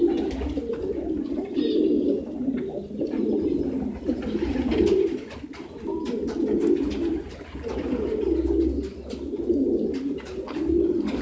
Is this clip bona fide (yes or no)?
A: yes